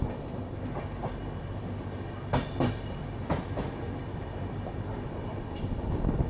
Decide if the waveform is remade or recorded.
recorded